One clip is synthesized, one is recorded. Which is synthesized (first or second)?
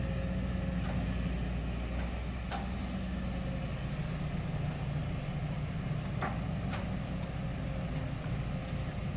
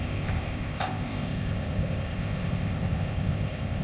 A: second